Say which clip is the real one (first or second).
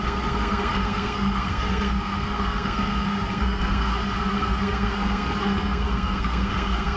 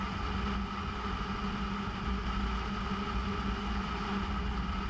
second